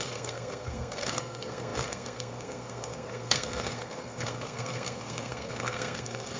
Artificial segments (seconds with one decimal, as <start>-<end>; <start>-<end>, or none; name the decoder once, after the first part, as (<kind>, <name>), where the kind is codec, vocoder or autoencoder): 0.0-6.4 (codec, SNAC)

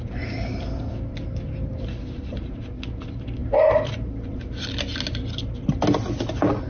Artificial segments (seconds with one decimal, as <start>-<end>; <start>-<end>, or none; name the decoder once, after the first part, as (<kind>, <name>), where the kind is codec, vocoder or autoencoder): none

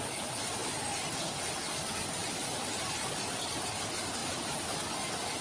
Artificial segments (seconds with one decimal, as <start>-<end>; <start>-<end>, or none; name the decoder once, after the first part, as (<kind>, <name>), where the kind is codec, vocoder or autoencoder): none

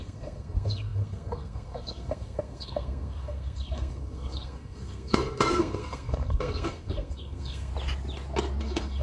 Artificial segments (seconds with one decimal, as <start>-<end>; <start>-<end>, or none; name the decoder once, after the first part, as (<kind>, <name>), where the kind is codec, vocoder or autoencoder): 0.0-7.7 (codec, SNAC); 8.6-9.0

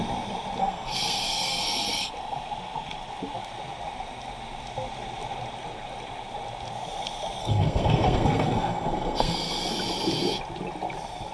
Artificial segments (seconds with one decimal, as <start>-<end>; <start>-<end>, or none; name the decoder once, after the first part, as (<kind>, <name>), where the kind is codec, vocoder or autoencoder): 0.6-2.1 (codec, SNAC); 7.4-9.7

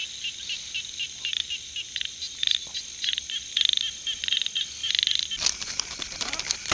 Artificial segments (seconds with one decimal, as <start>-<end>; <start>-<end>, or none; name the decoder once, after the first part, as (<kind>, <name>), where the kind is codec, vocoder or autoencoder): 4.8-6.7 (vocoder, BigVGAN v2)

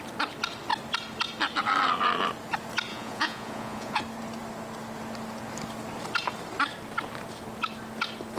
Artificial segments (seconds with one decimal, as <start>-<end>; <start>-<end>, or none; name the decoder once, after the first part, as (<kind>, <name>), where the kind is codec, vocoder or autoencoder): 2.9-4.0 (vocoder, Vocos)